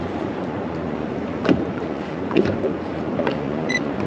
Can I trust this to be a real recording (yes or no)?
no